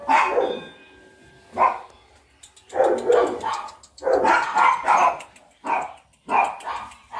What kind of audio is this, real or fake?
fake